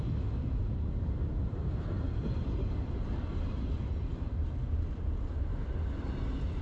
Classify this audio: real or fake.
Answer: real